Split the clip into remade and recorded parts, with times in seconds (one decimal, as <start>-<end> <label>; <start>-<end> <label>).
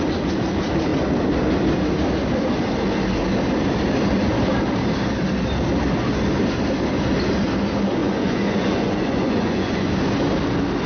0.0-8.0 recorded; 8.0-9.9 remade; 9.9-10.9 recorded